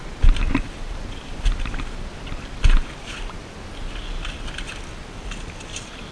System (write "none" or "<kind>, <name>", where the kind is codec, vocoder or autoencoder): none